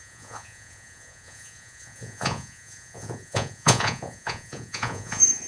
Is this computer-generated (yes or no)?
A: yes